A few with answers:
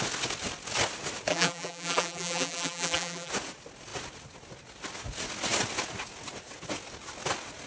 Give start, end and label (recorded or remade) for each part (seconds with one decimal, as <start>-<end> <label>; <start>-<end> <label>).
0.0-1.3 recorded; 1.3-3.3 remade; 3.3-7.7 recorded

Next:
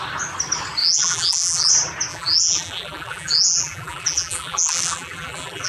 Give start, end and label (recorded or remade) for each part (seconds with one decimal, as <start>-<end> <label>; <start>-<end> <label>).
0.0-0.8 recorded; 0.8-1.7 remade; 1.7-2.1 recorded; 2.1-5.7 remade

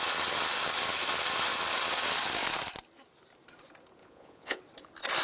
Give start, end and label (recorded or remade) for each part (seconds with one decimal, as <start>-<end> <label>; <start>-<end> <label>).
0.0-4.0 recorded; 4.0-4.6 remade; 4.6-5.2 recorded